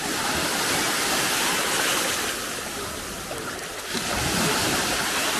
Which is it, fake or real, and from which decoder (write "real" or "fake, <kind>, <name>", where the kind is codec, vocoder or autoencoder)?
real